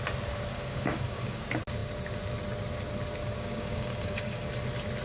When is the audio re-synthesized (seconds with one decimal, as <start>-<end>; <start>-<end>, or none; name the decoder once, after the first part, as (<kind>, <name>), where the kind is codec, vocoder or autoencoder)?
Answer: 0.5-1.4 (codec, DAC); 3.2-4.5